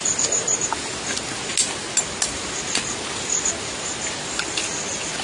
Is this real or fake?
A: real